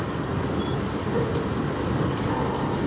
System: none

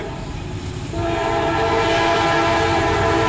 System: vocoder, BigVGAN v2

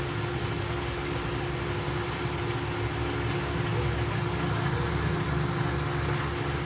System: none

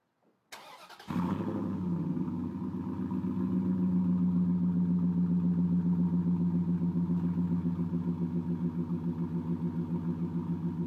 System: none